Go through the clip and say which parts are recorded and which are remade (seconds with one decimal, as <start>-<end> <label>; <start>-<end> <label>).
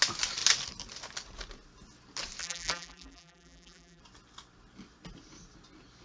0.0-2.4 recorded; 2.4-4.0 remade; 4.0-6.0 recorded